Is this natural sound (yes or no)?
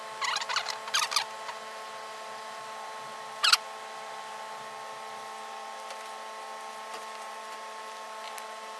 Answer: yes